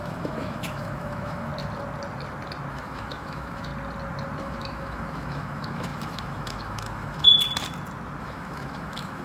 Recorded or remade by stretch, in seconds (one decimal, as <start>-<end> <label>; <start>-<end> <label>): 0.0-1.5 remade; 1.5-2.7 recorded; 2.7-3.7 remade; 3.7-4.4 recorded; 4.4-7.3 remade; 7.3-8.2 recorded; 8.2-9.2 remade